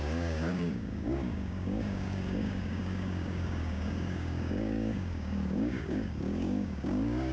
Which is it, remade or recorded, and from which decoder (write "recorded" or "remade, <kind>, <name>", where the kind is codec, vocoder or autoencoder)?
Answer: remade, codec, DAC